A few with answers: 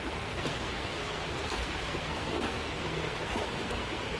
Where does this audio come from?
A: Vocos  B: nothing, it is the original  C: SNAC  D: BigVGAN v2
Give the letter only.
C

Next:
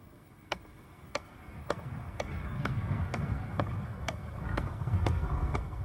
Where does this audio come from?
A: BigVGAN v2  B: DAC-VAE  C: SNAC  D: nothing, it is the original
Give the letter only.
C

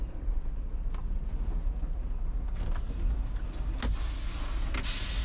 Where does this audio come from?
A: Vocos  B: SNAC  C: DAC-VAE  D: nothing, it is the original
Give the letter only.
D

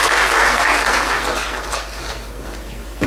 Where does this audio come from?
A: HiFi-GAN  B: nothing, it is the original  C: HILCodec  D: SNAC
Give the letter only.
D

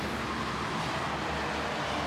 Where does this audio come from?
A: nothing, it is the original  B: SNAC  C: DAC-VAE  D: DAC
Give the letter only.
A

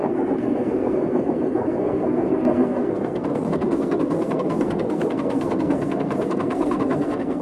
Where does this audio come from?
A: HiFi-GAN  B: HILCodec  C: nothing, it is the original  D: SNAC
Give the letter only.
D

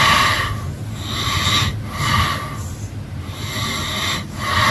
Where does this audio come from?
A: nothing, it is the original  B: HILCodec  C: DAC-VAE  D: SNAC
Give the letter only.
A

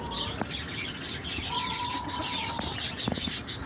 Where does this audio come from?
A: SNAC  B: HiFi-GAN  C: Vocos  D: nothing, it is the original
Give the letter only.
D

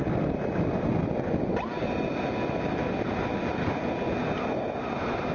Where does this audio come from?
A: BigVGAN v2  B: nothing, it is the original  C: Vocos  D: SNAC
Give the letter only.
B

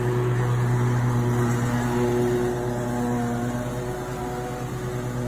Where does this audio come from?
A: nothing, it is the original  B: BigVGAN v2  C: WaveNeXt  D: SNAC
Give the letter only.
A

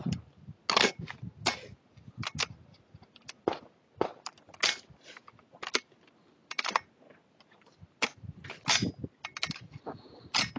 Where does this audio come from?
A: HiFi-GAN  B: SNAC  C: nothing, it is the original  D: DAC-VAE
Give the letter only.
C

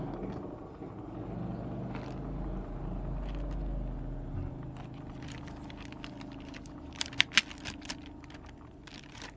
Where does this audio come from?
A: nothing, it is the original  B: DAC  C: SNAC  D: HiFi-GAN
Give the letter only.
A